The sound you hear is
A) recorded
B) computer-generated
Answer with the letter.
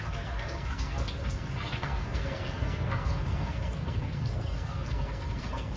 B